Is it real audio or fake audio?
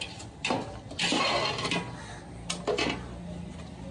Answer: real